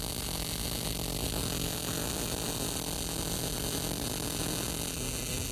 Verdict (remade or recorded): recorded